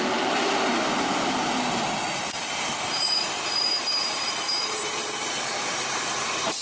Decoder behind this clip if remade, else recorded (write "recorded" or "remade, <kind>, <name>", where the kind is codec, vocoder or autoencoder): remade, vocoder, BigVGAN v2